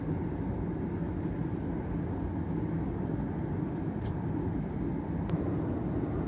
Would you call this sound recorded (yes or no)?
yes